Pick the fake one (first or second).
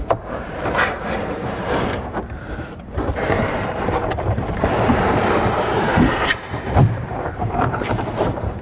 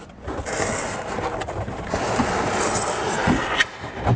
first